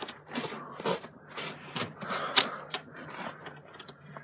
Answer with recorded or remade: remade